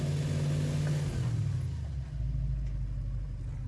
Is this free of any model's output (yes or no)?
yes